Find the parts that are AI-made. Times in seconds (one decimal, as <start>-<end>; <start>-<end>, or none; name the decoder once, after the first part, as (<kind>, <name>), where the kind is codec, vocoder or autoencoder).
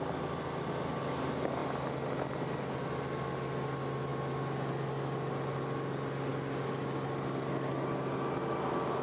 none